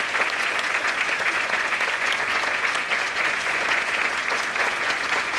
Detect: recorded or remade remade